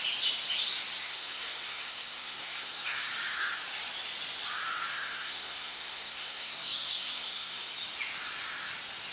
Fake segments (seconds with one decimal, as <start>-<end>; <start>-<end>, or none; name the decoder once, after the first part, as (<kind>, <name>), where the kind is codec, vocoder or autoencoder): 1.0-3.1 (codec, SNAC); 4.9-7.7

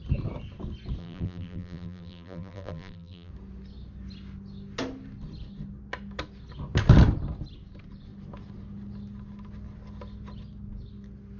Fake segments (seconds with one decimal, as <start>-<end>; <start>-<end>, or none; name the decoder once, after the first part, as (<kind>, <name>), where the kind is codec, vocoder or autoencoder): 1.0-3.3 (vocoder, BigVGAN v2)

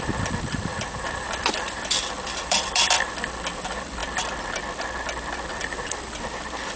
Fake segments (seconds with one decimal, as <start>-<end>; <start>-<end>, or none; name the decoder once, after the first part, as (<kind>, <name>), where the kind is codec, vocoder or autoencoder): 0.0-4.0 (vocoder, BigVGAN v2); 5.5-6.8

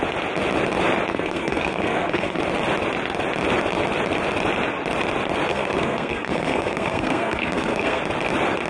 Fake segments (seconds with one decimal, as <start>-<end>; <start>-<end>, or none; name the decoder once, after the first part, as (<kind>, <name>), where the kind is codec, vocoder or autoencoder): 1.1-2.4 (codec, SNAC); 5.5-8.0

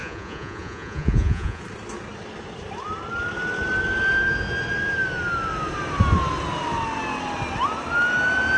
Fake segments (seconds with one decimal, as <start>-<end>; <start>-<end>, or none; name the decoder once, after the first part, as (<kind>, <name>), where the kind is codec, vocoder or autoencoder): 0.0-1.6 (vocoder, Vocos)

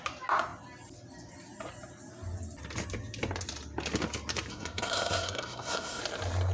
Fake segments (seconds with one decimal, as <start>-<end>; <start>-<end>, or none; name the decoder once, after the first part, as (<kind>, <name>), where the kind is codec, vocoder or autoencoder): 4.5-6.0 (codec, SNAC)

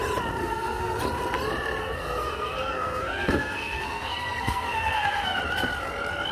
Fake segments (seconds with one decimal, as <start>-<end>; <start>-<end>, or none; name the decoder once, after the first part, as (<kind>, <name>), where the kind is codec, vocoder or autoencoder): 0.4-1.0 (codec, SNAC); 1.8-5.4